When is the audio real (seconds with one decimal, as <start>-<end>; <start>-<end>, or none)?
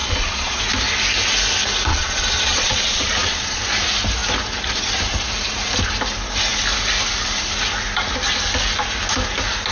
0.6-1.9; 3.6-9.7